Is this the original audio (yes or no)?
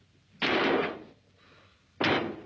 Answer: yes